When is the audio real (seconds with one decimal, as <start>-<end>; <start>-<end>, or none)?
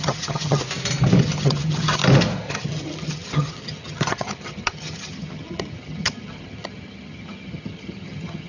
0.6-1.2; 2.0-2.5